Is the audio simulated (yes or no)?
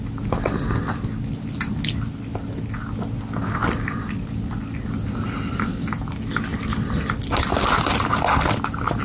no